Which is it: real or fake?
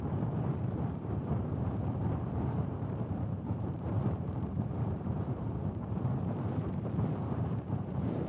fake